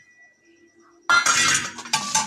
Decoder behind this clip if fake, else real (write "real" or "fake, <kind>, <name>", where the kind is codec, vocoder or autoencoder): real